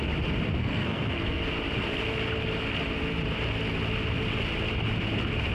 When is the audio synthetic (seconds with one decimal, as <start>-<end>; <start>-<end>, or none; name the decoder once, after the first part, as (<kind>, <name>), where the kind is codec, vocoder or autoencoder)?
0.6-1.4 (codec, SNAC)